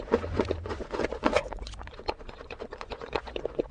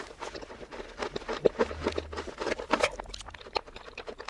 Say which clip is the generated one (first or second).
first